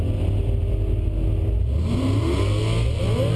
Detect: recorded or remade recorded